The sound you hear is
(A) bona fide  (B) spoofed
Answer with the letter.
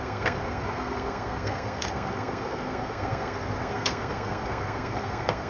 B